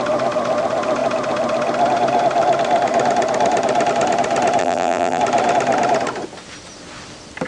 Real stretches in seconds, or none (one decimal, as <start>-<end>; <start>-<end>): 0.0-4.6; 5.2-7.5